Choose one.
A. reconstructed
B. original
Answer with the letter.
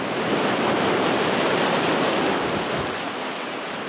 B